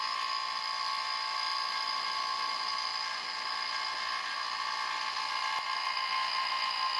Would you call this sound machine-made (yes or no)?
no